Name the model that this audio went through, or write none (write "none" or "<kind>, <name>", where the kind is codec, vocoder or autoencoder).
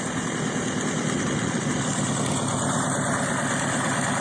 none